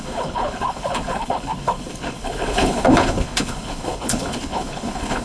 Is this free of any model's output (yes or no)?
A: no